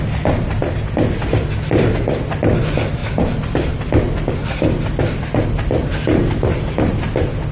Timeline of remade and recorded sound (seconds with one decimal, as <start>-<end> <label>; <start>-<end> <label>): 0.0-7.5 recorded